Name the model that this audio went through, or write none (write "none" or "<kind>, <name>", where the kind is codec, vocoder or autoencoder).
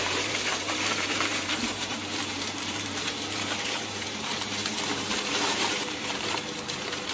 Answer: vocoder, BigVGAN v2